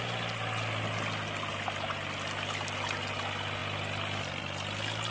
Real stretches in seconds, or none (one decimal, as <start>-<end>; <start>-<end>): 0.0-5.1